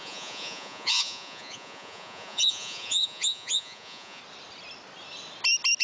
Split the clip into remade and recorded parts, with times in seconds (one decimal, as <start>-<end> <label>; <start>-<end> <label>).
0.0-4.2 remade; 4.2-5.8 recorded